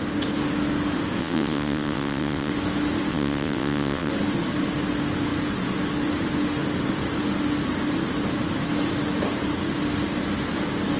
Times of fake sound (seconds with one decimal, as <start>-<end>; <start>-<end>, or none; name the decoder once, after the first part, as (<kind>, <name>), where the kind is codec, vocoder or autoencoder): 1.2-2.5 (vocoder, WaveNeXt); 3.1-4.1